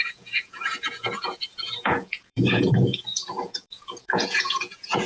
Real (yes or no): no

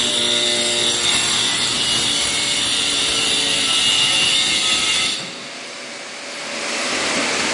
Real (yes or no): yes